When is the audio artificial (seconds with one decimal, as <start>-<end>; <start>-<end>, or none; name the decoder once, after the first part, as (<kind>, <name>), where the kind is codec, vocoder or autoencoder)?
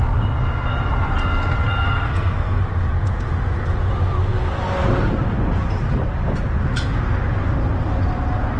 1.8-2.6 (codec, SNAC)